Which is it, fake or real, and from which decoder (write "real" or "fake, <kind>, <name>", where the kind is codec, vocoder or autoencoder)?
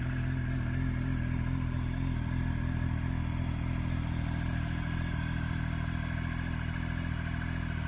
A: real